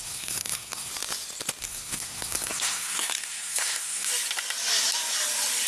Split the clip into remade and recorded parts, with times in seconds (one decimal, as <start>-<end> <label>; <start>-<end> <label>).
0.0-0.9 remade; 0.9-1.6 recorded; 1.6-4.1 remade; 4.1-5.7 recorded